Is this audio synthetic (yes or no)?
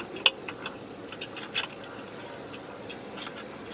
no